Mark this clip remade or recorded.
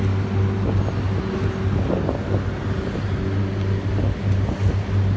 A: recorded